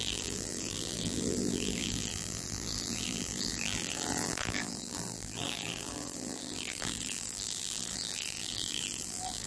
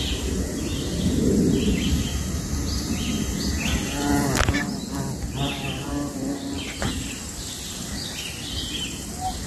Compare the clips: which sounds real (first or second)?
second